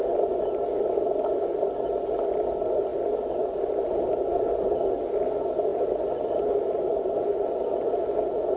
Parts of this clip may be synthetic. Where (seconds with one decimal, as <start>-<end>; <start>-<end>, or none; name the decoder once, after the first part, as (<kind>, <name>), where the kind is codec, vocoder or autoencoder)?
none